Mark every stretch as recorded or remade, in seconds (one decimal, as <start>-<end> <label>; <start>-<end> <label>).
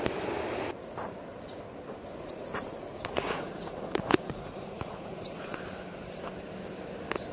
0.0-2.1 recorded; 2.1-5.6 remade; 5.6-7.3 recorded